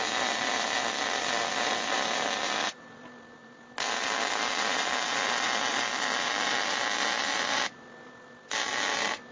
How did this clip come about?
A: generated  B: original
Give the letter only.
B